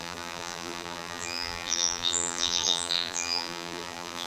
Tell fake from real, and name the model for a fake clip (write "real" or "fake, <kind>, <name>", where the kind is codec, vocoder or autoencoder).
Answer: fake, vocoder, BigVGAN v2